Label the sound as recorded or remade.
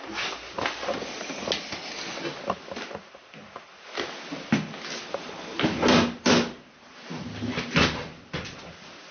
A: recorded